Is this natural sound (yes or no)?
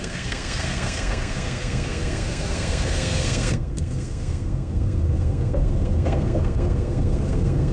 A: no